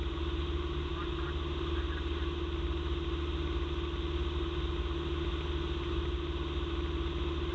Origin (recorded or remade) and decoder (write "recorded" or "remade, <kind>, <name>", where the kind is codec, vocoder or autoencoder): recorded